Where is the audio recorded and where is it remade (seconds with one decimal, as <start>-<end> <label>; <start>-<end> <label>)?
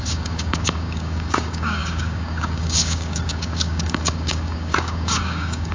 0.0-5.7 remade